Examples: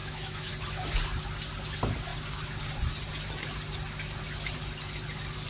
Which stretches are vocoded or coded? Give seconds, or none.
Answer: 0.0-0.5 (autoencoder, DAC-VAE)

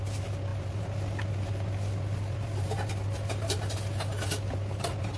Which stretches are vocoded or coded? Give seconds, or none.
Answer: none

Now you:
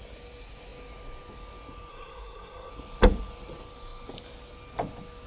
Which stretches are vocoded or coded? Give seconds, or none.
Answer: 1.9-2.7 (codec, SNAC)